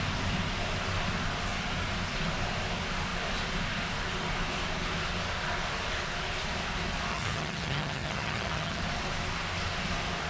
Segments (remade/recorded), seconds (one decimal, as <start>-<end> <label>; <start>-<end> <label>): 0.0-7.1 recorded; 7.1-8.8 remade; 8.8-10.3 recorded